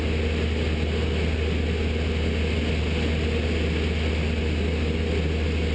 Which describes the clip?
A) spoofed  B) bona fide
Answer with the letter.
B